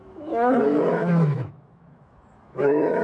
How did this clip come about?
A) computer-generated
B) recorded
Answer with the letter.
A